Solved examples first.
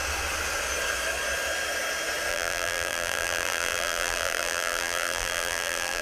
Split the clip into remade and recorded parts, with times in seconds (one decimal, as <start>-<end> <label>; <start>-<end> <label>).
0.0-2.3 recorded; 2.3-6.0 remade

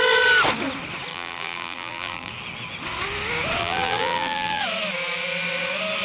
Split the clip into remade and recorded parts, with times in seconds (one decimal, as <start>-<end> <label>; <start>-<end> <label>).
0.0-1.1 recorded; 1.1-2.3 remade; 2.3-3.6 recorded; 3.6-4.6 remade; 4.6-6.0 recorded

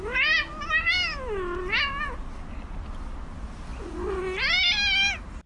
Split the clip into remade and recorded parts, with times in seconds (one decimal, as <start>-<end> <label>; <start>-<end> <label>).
0.0-3.7 recorded; 3.7-4.2 remade; 4.2-5.5 recorded

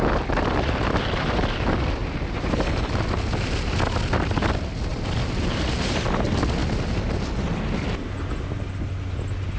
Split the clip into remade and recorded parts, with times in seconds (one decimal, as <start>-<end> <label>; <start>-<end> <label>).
0.0-2.0 recorded; 2.0-2.5 remade; 2.5-9.6 recorded